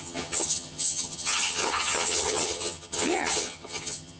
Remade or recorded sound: remade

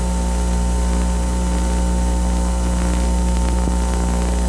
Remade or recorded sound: recorded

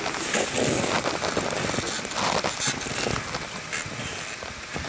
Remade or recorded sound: recorded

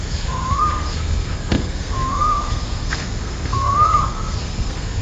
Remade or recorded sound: remade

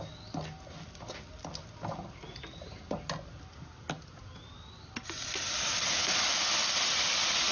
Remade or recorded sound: recorded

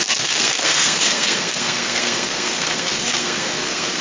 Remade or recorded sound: remade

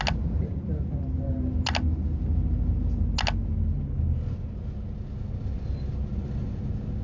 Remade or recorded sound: recorded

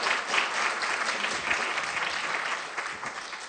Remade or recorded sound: recorded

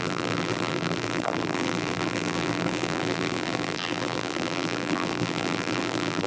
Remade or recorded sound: remade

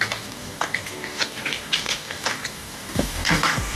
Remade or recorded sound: remade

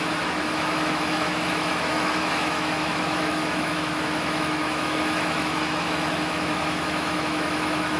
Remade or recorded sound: remade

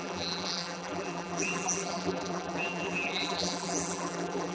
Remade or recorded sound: remade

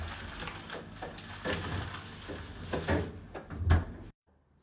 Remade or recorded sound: recorded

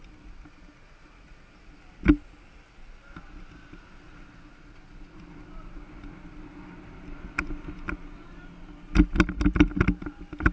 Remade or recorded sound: recorded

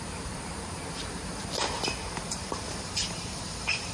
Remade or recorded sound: remade